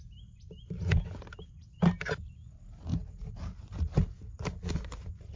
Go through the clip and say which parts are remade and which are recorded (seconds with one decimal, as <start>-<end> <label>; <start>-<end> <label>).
0.0-5.4 recorded